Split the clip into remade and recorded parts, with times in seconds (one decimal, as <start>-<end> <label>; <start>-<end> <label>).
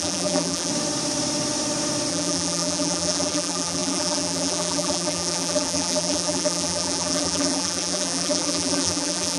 0.0-0.7 remade; 0.7-2.1 recorded; 2.1-9.4 remade